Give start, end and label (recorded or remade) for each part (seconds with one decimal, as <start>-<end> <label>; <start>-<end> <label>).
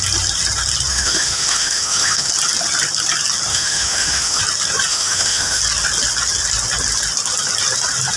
0.0-0.9 recorded; 0.9-2.3 remade; 2.3-3.5 recorded; 3.5-4.4 remade; 4.4-4.9 recorded; 4.9-5.6 remade; 5.6-8.2 recorded